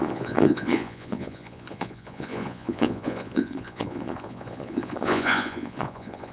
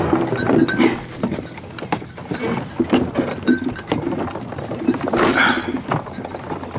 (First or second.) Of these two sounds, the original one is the second